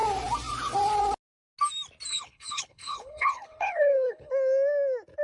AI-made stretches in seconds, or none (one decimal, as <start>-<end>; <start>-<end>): 2.1-4.3